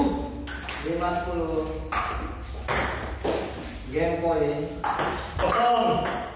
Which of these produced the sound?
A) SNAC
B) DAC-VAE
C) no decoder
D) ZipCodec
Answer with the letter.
C